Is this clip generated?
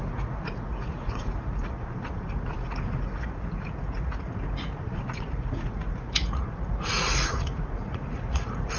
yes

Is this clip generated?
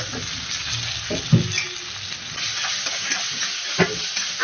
no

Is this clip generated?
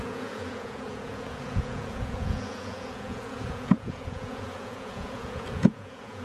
yes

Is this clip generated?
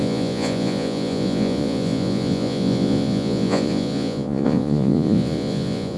yes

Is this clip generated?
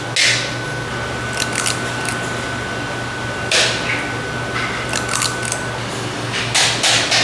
no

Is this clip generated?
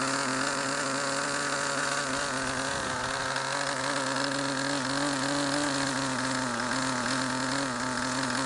no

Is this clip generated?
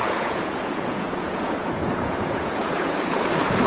yes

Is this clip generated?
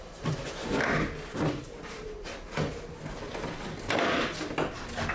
no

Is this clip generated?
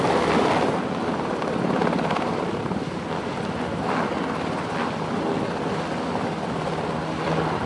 no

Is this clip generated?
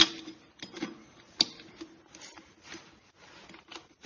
no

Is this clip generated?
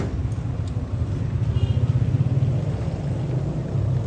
no